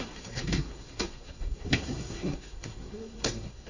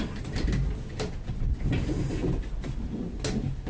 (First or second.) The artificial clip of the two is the first